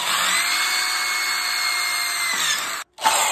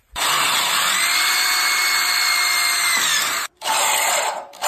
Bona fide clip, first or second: first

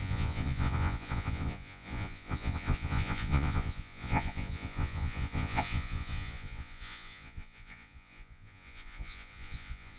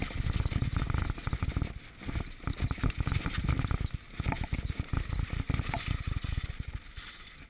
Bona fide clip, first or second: second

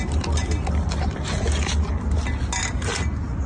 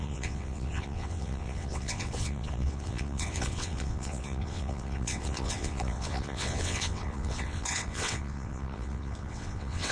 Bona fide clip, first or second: first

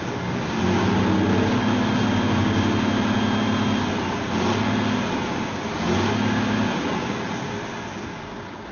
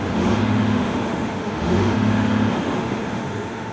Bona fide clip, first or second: first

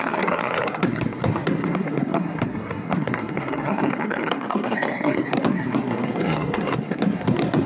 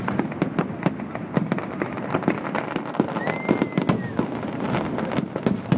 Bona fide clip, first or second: second